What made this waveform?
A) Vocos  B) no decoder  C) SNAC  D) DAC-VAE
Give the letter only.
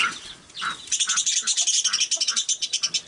B